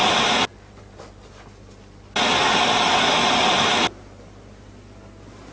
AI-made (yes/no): no